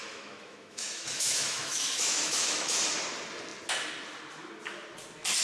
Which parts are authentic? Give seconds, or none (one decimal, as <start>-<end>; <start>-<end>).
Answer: 2.8-5.4